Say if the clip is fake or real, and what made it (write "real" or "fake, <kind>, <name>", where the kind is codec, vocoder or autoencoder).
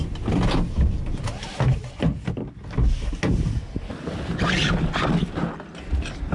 real